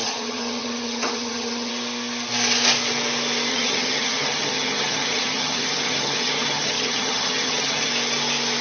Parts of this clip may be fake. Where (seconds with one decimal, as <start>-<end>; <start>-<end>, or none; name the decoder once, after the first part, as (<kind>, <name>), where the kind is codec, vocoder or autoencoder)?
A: 0.0-1.7 (vocoder, HiFi-GAN); 3.5-7.9